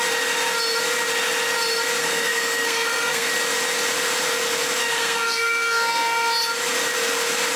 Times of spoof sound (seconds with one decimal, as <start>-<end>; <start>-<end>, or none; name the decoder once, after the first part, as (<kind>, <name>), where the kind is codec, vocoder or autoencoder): 2.0-3.3 (codec, SNAC); 4.9-6.3